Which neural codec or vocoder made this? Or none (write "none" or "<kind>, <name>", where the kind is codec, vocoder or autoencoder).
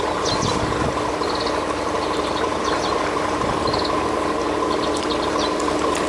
none